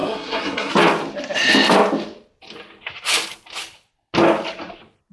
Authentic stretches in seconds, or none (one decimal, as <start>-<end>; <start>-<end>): 0.7-5.1